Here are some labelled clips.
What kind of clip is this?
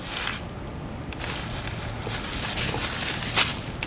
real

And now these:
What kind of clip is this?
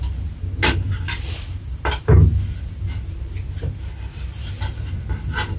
real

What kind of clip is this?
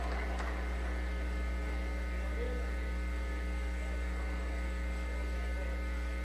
fake